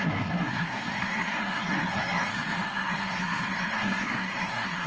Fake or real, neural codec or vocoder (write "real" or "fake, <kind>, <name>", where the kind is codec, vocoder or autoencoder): fake, codec, SNAC